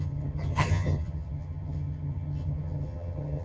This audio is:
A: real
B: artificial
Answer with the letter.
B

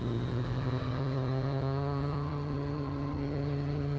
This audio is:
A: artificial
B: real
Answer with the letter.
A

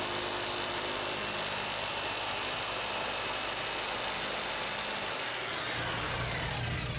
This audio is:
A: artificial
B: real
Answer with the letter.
B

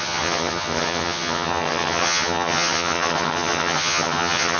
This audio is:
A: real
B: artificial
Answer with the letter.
B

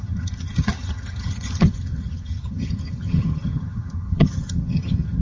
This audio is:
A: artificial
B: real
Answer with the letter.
A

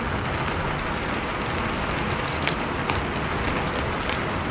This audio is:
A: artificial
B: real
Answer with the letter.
B